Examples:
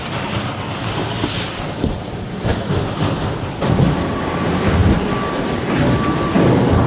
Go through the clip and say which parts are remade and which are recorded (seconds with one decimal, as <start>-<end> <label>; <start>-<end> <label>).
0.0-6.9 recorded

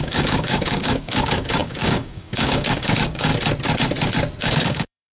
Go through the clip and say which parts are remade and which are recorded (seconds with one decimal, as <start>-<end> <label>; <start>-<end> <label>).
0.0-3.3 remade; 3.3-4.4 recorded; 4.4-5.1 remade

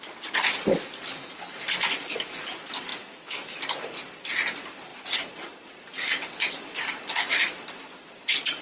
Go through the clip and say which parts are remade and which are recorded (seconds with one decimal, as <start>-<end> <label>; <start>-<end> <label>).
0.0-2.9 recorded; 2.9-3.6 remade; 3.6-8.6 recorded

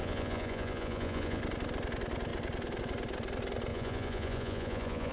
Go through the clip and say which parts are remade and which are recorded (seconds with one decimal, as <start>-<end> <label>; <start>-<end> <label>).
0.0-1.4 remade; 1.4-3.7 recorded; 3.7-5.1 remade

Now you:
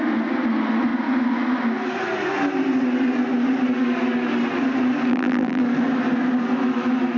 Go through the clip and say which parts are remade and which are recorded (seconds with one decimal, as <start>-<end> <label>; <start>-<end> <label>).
0.0-5.1 recorded; 5.1-5.6 remade; 5.6-7.2 recorded